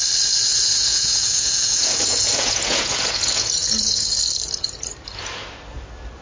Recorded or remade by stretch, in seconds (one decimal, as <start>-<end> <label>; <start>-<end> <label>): 0.0-0.5 recorded; 0.5-4.2 remade; 4.2-6.2 recorded